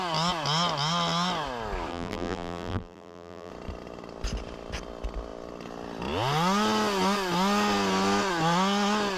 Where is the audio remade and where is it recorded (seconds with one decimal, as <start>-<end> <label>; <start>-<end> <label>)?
0.0-1.9 recorded; 1.9-3.5 remade; 3.5-9.2 recorded